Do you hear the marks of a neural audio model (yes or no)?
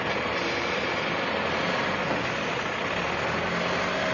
no